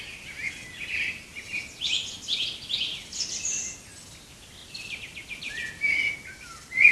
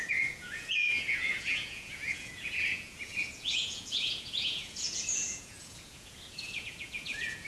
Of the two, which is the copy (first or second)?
second